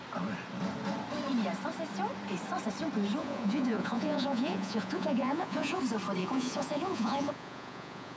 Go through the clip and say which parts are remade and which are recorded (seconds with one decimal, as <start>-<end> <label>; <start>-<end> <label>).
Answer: 0.0-3.2 recorded; 3.2-5.8 remade; 5.8-6.2 recorded; 6.2-8.2 remade